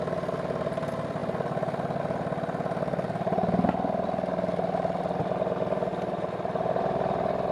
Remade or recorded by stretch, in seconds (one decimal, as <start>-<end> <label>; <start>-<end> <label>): 0.0-5.9 recorded; 5.9-7.5 remade